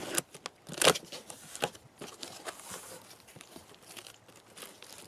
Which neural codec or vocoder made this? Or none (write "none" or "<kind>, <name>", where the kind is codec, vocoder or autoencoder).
none